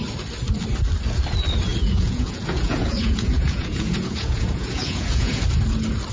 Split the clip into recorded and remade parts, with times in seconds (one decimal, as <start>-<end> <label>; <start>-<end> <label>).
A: 0.0-1.7 recorded; 1.7-5.4 remade; 5.4-6.1 recorded